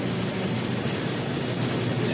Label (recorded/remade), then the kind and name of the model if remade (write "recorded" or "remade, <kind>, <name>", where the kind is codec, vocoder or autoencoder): recorded